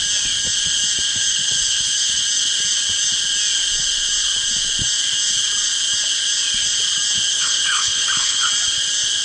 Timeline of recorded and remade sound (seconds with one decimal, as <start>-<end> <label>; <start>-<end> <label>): 0.0-1.1 recorded; 1.1-2.2 remade; 2.2-7.3 recorded; 7.3-8.5 remade; 8.5-9.2 recorded